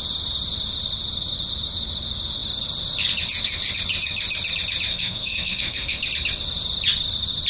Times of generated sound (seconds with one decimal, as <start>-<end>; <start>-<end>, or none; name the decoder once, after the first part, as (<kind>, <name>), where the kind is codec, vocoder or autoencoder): 4.9-6.0 (codec, SNAC)